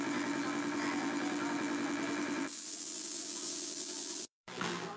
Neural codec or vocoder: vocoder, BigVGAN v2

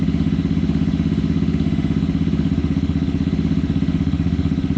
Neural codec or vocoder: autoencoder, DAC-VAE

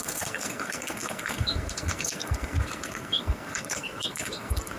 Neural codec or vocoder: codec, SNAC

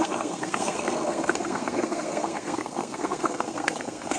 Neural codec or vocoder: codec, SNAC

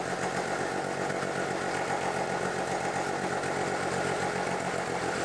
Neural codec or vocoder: none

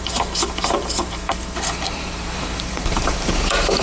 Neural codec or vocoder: vocoder, BigVGAN v2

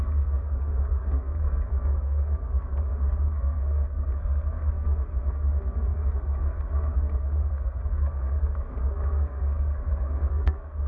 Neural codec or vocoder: codec, SNAC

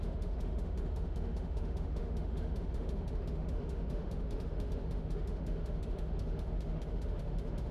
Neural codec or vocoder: autoencoder, DAC-VAE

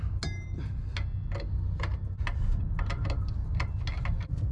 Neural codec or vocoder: none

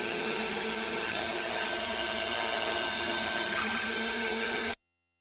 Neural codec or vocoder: vocoder, HiFi-GAN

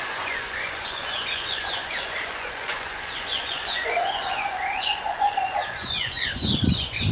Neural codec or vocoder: vocoder, Vocos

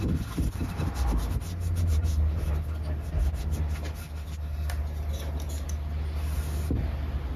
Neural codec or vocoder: none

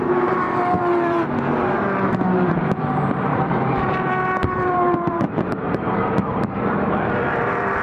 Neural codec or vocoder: vocoder, BigVGAN v2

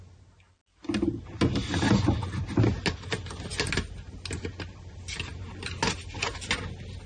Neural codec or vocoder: none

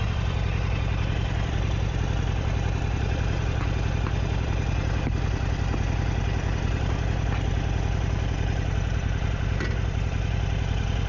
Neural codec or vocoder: none